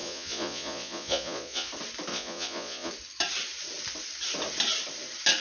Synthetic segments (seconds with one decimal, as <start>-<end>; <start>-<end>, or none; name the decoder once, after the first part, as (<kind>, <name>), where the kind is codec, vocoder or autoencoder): 0.0-1.7 (vocoder, Vocos); 2.1-2.9